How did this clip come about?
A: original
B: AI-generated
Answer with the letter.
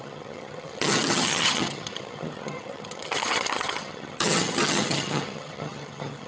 B